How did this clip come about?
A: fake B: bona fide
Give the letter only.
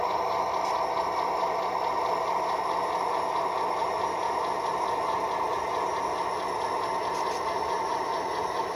B